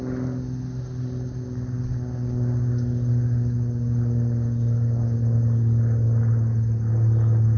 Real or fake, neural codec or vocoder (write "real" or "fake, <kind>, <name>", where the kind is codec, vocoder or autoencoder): real